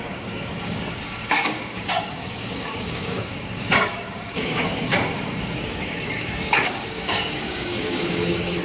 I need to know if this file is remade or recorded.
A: remade